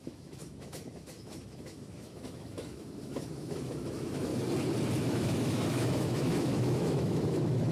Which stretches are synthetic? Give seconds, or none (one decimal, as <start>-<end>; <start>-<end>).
0.0-4.3; 5.0-7.7